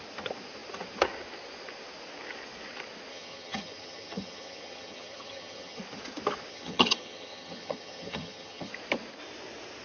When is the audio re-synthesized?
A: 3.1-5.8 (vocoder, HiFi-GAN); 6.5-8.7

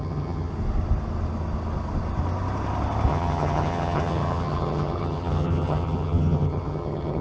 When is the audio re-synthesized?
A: 0.0-0.5 (vocoder, HiFi-GAN); 3.1-7.2

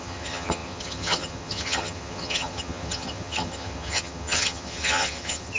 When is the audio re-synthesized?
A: 0.0-5.6 (vocoder, HiFi-GAN)

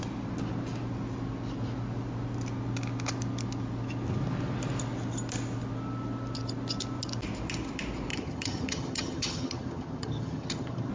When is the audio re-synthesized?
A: 8.1-10.9 (vocoder, HiFi-GAN)

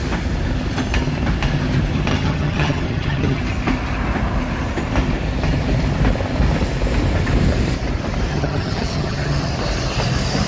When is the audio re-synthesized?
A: 2.1-3.4 (vocoder, HiFi-GAN); 8.3-9.5

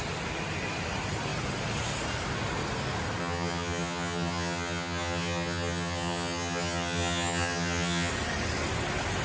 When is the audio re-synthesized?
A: 3.2-8.1 (vocoder, HiFi-GAN)